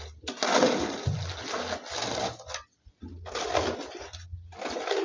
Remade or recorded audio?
recorded